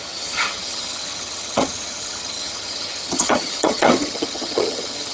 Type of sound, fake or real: fake